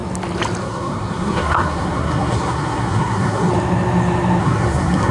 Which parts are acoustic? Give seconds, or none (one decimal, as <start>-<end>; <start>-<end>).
0.0-0.6; 3.5-4.4